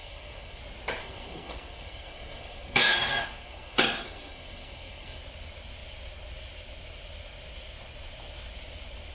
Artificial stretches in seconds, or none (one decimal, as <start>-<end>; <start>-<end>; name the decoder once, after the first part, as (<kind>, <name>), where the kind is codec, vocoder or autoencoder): 0.0-0.6 (codec, SNAC); 1.0-5.2